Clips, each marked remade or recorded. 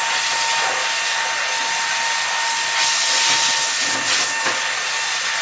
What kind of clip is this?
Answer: recorded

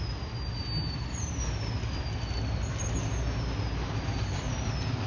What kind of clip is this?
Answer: recorded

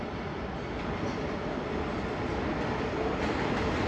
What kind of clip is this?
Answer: recorded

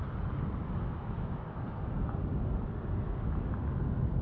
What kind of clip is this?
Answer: recorded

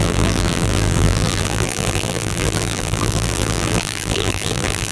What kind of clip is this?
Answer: remade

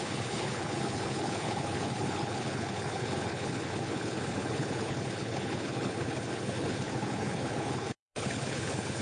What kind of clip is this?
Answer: remade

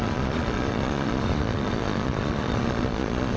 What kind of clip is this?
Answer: remade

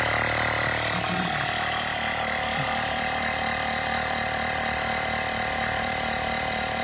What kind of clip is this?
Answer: remade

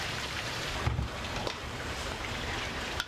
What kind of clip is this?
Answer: remade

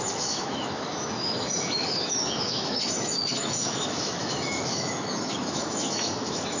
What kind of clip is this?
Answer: remade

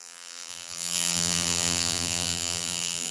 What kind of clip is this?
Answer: remade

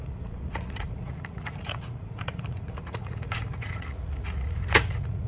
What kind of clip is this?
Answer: remade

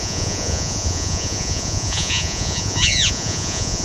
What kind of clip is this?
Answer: remade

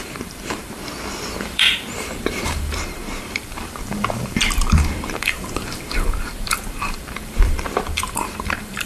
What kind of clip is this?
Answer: remade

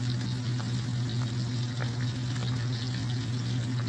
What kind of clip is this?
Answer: recorded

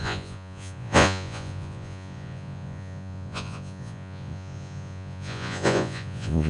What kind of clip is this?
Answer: remade